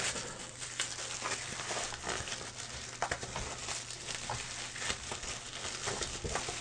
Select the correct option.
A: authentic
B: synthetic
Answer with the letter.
A